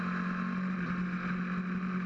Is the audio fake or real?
real